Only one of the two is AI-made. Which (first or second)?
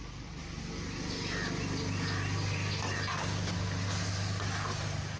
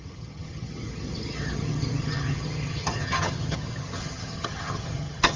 second